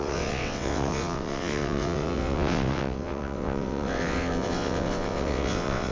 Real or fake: fake